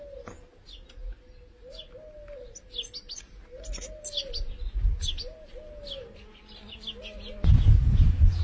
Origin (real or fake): real